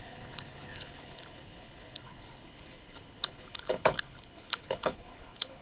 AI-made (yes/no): yes